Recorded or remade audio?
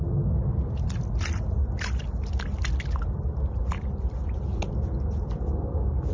recorded